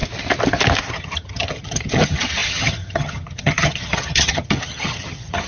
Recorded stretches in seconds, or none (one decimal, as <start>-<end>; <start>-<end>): 0.0-0.9